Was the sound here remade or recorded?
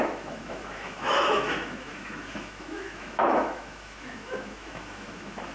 remade